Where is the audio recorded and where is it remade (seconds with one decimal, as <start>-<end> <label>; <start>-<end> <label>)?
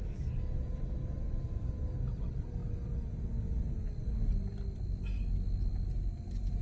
0.0-6.6 recorded